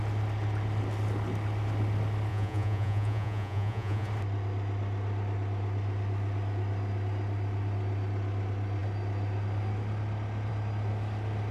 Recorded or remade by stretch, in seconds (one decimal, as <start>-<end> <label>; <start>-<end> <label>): 0.0-2.3 recorded; 2.3-4.1 remade; 4.1-11.5 recorded